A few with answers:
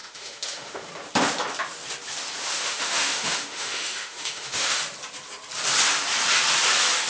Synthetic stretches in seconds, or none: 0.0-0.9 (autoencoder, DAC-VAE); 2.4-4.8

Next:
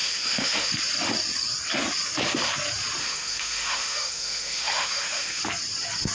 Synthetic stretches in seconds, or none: 0.0-0.7 (autoencoder, DAC-VAE); 3.0-5.4

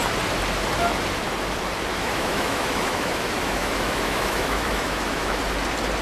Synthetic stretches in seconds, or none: 1.9-5.4 (autoencoder, DAC-VAE)

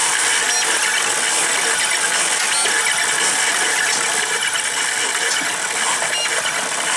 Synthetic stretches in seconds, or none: none

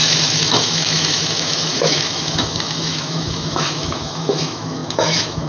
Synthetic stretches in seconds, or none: 0.0-5.5 (autoencoder, DAC-VAE)